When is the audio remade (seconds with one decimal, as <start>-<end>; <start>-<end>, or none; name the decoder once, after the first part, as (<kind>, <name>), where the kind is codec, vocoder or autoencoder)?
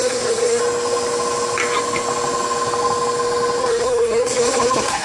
0.0-0.6 (codec, SNAC); 3.6-5.0